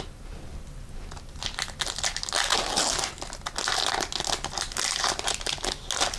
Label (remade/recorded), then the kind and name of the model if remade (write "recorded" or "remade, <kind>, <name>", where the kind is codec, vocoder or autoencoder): recorded